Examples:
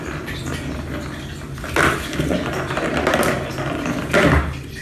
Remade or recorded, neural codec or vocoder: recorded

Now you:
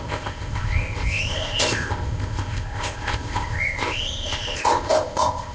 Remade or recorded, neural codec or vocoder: remade, codec, ZipCodec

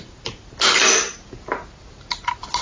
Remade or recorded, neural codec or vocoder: recorded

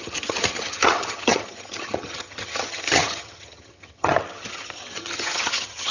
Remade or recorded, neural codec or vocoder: remade, vocoder, HiFi-GAN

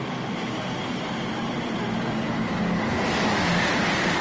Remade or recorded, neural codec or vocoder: recorded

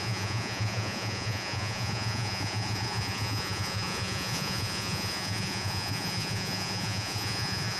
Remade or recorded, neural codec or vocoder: remade, vocoder, Vocos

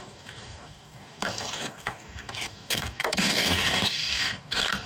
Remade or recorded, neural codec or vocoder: remade, codec, DAC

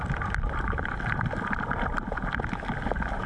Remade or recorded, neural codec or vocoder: remade, vocoder, BigVGAN v2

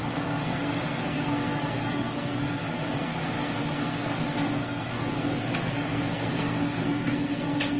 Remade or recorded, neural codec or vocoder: remade, codec, SNAC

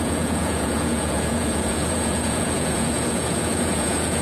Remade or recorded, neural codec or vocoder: remade, vocoder, Vocos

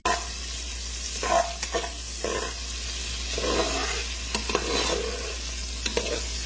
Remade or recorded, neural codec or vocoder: recorded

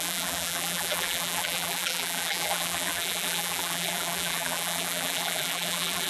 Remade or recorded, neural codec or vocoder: remade, vocoder, BigVGAN v2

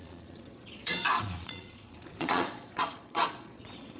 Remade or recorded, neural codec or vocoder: remade, vocoder, Vocos